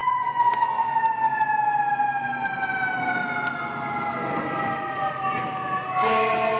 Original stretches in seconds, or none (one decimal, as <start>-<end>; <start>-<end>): 1.0-6.6